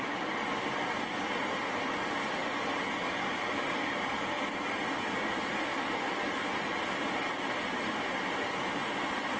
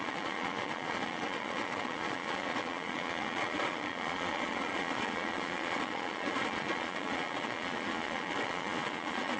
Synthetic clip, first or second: second